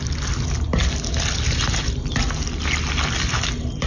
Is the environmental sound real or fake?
real